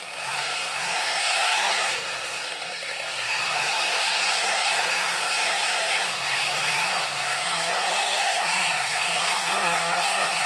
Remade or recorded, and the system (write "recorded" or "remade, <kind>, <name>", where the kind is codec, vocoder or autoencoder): remade, codec, SNAC